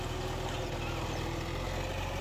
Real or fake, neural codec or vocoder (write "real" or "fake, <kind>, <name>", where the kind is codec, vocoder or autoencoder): real